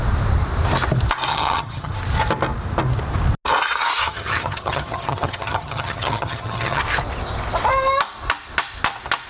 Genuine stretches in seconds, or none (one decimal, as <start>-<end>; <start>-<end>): 0.0-1.3; 1.9-4.0; 6.8-9.3